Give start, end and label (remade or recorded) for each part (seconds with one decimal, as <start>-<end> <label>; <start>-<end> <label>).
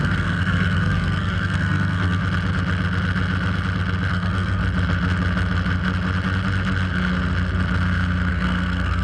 0.0-2.2 remade; 2.2-4.1 recorded; 4.1-4.6 remade; 4.6-8.3 recorded; 8.3-9.0 remade